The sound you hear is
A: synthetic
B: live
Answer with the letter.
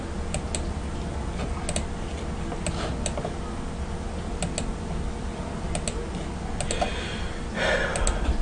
B